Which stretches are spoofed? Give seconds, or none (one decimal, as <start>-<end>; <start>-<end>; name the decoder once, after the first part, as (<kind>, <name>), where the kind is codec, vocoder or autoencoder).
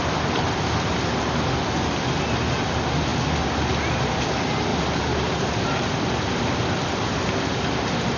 4.7-6.4 (vocoder, BigVGAN v2)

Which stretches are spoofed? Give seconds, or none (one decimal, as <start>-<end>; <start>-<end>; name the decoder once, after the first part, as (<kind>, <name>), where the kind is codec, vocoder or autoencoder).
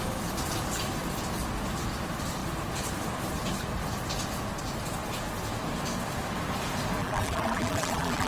7.0-8.3 (vocoder, BigVGAN v2)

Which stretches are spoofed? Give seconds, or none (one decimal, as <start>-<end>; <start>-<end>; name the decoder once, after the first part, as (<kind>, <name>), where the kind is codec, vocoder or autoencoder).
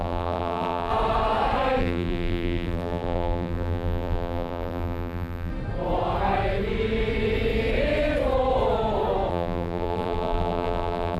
0.0-0.9 (vocoder, BigVGAN v2); 1.8-5.5; 9.3-11.2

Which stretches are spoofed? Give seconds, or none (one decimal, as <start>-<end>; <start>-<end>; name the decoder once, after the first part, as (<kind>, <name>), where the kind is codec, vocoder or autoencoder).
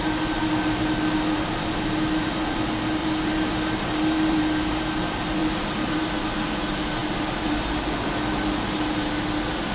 3.0-4.8 (vocoder, BigVGAN v2); 5.4-6.0; 7.0-7.5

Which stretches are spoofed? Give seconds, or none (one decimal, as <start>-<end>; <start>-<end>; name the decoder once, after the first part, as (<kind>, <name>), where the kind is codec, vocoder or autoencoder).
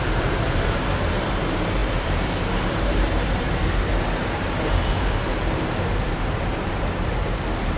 0.0-7.8 (vocoder, BigVGAN v2)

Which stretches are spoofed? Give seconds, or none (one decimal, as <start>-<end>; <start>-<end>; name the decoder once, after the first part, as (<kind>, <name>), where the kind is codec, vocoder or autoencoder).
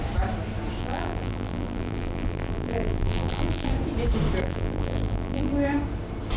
0.8-3.7 (vocoder, BigVGAN v2); 4.4-5.5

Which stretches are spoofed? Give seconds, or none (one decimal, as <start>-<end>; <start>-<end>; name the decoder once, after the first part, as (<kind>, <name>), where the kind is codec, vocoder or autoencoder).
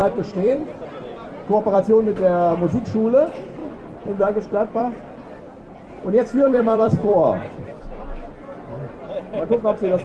0.0-1.8 (vocoder, BigVGAN v2); 3.6-8.0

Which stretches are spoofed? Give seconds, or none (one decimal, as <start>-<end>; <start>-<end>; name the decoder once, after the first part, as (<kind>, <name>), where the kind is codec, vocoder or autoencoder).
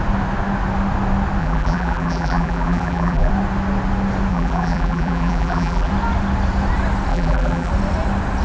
1.4-3.3 (vocoder, BigVGAN v2); 4.3-5.9; 7.1-7.7